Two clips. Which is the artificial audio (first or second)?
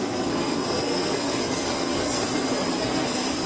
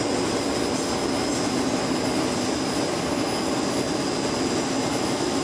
first